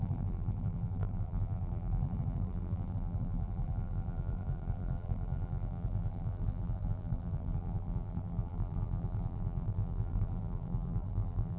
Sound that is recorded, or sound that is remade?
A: remade